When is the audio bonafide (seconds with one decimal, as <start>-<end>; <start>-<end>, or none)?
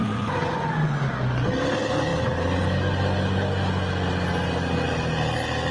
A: 0.7-5.7